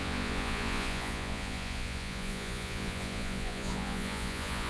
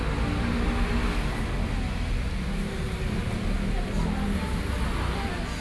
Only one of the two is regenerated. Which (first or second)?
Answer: first